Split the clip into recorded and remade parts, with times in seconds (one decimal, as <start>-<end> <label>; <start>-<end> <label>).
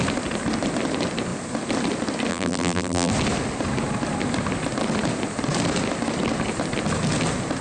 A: 0.0-2.3 recorded; 2.3-3.1 remade; 3.1-7.6 recorded